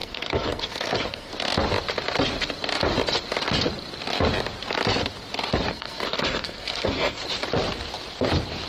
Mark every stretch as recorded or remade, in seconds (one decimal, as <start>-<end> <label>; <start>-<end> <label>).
0.0-1.3 remade; 1.3-5.7 recorded; 5.7-7.2 remade; 7.2-8.7 recorded